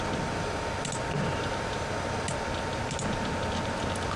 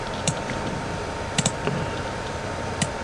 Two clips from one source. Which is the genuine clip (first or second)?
first